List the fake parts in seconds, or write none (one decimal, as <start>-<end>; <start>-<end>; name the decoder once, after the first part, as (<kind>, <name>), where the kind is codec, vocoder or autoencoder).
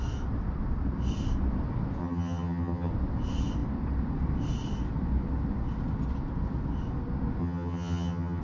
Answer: 2.0-2.9 (vocoder, HiFi-GAN); 7.4-8.4